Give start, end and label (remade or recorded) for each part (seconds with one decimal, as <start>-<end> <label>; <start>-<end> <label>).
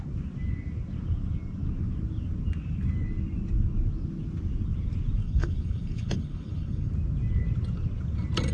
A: 0.0-5.2 recorded; 5.2-6.9 remade; 6.9-8.5 recorded